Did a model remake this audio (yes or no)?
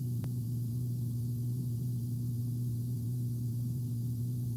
yes